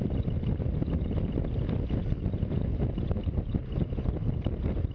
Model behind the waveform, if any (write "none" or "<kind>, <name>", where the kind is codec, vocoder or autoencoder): none